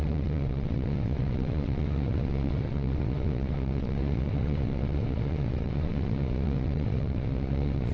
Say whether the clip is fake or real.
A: fake